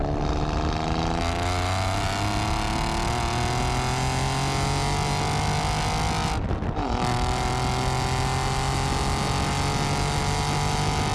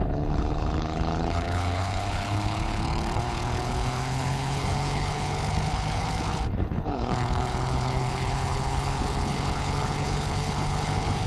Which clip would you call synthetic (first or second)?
second